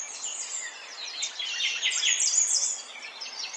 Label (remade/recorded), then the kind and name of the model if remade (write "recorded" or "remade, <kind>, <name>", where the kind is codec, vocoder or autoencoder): recorded